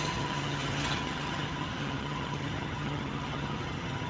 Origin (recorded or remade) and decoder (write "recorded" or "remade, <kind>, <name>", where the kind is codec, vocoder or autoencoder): remade, vocoder, HiFi-GAN